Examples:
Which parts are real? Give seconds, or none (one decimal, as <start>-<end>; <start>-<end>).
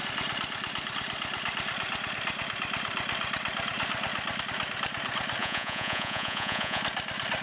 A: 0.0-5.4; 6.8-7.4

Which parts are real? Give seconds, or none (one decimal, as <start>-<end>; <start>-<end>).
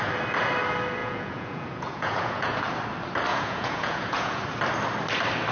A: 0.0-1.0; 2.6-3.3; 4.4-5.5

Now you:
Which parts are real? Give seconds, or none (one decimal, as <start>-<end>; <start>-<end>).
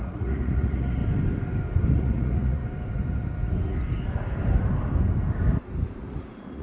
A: 1.0-1.9; 2.6-6.0